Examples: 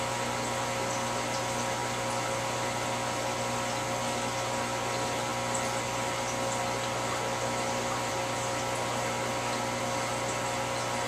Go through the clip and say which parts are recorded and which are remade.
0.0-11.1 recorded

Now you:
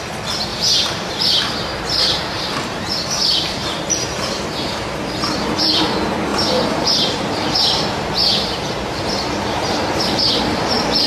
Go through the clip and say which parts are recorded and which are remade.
0.0-0.5 recorded; 0.5-3.8 remade; 3.8-6.3 recorded; 6.3-10.2 remade; 10.2-11.1 recorded

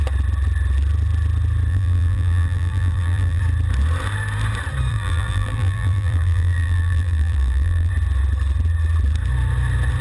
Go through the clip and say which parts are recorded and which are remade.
0.0-1.7 recorded; 1.7-3.4 remade; 3.4-4.9 recorded; 4.9-7.9 remade; 7.9-10.0 recorded

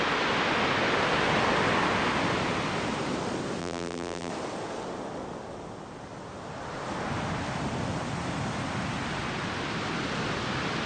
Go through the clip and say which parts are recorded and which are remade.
0.0-3.6 recorded; 3.6-4.3 remade; 4.3-10.9 recorded